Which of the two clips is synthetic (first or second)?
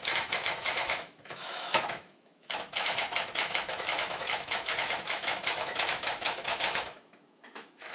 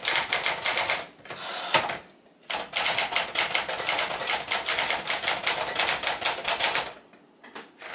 first